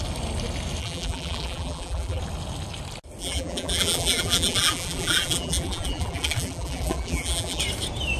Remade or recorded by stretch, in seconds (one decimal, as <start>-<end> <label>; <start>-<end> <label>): 0.0-0.8 recorded; 0.8-2.2 remade; 2.2-3.2 recorded; 3.2-7.6 remade; 7.6-8.2 recorded